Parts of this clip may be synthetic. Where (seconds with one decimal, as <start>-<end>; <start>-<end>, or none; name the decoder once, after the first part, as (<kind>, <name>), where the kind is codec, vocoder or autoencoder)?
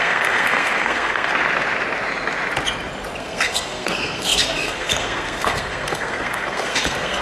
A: 0.0-1.3 (codec, SNAC); 3.2-7.2